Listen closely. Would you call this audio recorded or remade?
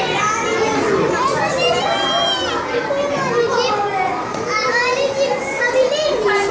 recorded